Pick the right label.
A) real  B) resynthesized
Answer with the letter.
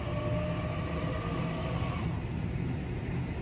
A